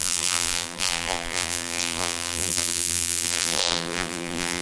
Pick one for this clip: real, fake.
fake